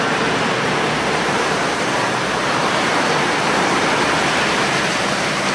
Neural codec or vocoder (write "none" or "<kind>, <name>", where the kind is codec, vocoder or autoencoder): vocoder, BigVGAN v2